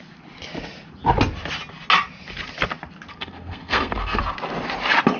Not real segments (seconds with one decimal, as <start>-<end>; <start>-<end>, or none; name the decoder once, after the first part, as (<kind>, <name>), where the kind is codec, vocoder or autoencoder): 3.1-4.2 (codec, SNAC)